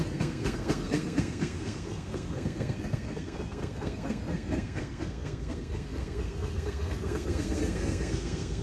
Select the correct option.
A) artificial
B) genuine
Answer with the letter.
A